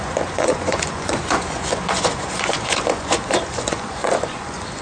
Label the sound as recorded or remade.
remade